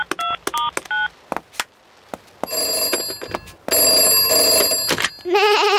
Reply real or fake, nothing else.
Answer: real